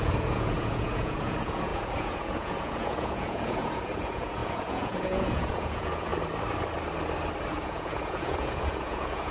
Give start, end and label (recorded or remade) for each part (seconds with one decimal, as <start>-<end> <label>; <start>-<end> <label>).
0.0-6.1 remade; 6.1-7.5 recorded; 7.5-9.3 remade